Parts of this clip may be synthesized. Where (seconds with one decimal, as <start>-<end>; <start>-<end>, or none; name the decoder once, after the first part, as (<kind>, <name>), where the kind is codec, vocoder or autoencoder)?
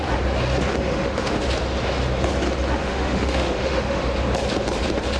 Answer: 0.7-1.4 (autoencoder, DAC-VAE); 2.8-4.0